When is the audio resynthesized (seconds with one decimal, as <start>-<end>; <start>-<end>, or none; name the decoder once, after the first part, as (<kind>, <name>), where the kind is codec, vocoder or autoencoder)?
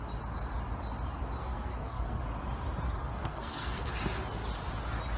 1.4-2.2 (codec, SNAC); 3.0-3.9